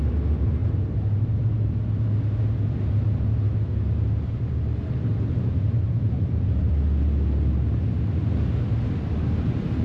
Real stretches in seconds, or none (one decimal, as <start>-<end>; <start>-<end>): 0.0-0.6; 1.5-5.1; 6.7-9.8